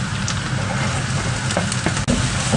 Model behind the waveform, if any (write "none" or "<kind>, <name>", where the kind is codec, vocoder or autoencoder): none